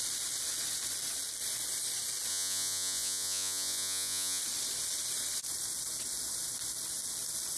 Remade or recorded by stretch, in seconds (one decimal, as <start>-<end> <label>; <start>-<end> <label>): 0.0-2.3 recorded; 2.3-4.4 remade; 4.4-7.6 recorded